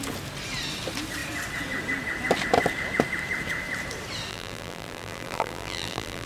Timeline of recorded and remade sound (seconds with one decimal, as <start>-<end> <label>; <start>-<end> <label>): 0.0-4.3 recorded; 4.3-6.3 remade